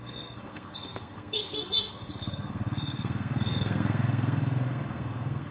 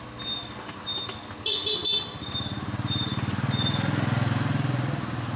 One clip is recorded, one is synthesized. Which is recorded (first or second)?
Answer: second